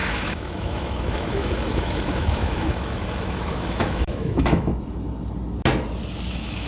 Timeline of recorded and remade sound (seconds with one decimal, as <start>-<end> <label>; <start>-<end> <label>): 0.0-4.7 remade; 4.7-6.3 recorded; 6.3-6.7 remade